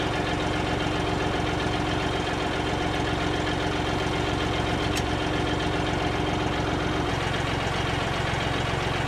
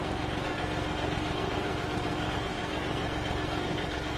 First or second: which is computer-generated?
second